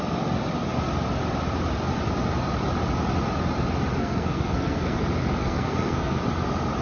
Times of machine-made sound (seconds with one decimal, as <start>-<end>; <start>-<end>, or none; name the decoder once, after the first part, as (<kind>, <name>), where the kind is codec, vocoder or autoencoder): 4.0-5.0 (codec, SNAC); 5.4-6.2